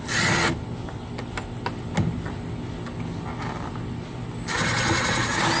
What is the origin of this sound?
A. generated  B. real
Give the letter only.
B